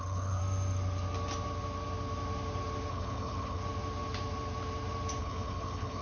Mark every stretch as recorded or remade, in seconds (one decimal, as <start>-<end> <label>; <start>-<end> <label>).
0.0-0.4 remade; 0.4-2.9 recorded; 2.9-3.6 remade; 3.6-5.2 recorded; 5.2-6.0 remade